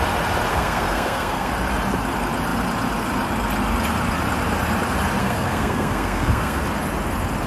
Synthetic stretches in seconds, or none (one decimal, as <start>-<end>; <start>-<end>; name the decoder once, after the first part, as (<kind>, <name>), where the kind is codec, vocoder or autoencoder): 0.5-1.5 (codec, SNAC); 5.2-6.6